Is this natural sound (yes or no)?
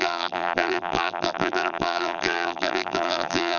no